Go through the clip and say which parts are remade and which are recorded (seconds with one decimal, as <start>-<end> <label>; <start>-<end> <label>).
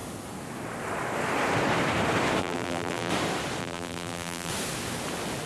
0.0-2.4 recorded; 2.4-3.1 remade; 3.1-3.6 recorded; 3.6-4.5 remade; 4.5-5.5 recorded